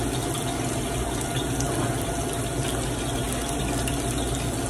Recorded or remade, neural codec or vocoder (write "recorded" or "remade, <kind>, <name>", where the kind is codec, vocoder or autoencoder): recorded